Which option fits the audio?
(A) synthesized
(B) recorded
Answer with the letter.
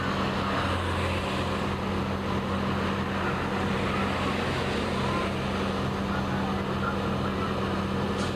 B